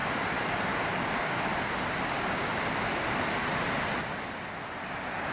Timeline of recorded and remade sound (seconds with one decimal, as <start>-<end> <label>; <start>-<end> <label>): 0.0-0.9 recorded; 0.9-1.5 remade; 1.5-2.1 recorded; 2.1-2.5 remade; 2.5-5.3 recorded